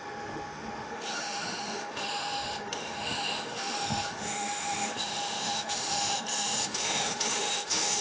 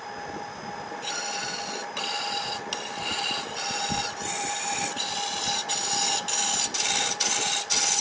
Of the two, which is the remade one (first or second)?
first